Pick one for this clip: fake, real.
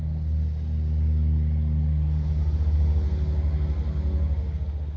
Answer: real